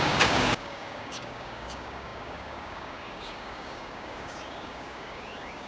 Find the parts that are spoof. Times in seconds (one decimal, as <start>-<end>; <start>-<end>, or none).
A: 0.0-5.7